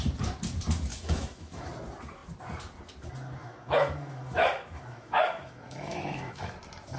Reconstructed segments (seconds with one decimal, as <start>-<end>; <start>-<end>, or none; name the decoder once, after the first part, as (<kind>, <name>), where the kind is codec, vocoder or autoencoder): 0.9-1.7 (autoencoder, DAC-VAE); 3.4-6.5